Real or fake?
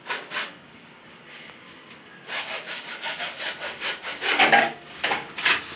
fake